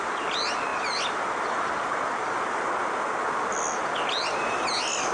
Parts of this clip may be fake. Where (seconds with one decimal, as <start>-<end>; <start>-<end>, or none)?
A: none